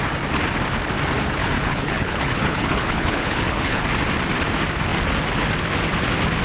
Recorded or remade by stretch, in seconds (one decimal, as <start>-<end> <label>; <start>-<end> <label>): 0.0-1.4 recorded; 1.4-3.8 remade; 3.8-6.4 recorded